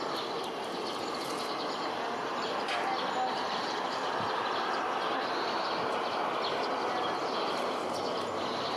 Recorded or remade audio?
recorded